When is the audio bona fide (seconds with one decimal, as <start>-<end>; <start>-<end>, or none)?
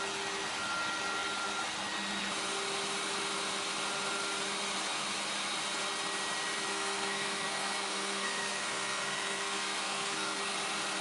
0.0-6.7; 10.4-11.0